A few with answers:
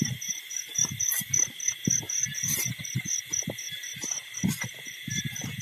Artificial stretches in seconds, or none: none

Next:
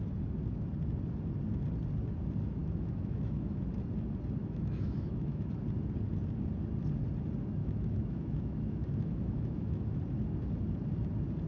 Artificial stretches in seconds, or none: 2.6-3.6; 4.4-5.5; 7.6-10.0

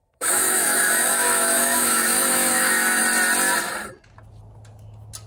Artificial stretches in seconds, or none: 0.0-3.0

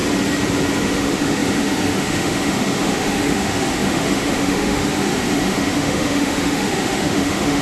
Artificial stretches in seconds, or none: 0.8-7.6

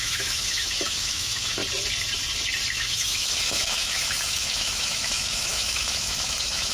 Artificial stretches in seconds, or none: 0.0-1.6; 2.7-6.7

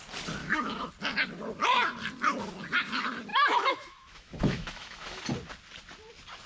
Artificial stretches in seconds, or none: 0.4-0.9; 3.3-5.2

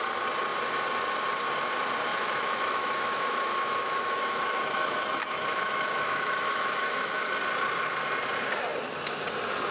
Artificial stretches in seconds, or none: 2.1-7.3

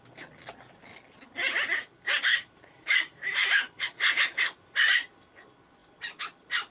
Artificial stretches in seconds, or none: 2.3-4.0